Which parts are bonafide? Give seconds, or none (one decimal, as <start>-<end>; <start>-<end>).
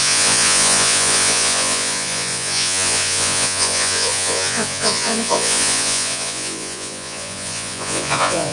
none